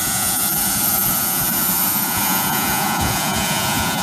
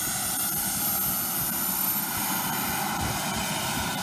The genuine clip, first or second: second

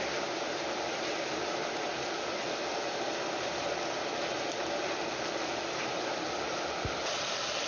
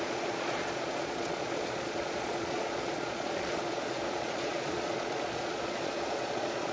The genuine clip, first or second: first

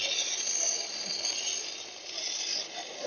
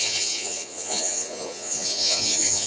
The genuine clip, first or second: first